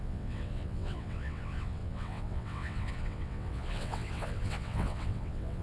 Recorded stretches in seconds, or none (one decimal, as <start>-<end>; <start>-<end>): none